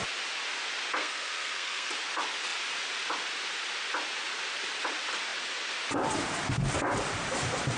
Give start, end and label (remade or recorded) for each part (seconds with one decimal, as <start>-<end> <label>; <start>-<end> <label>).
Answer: 0.0-1.0 recorded; 1.0-1.9 remade; 1.9-7.8 recorded